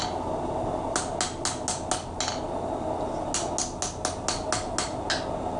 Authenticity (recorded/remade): recorded